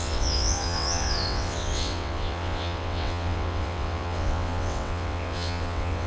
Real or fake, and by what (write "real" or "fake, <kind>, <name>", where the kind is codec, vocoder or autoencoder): fake, vocoder, WaveNeXt